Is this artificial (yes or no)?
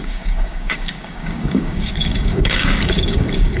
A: yes